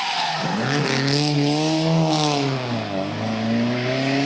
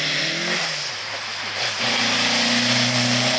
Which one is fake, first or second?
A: first